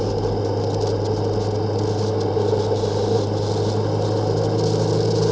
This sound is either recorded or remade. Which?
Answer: recorded